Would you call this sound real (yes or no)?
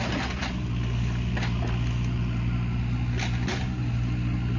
yes